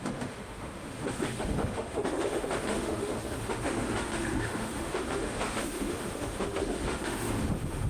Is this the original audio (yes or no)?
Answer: no